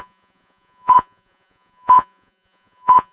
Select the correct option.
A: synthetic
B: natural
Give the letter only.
A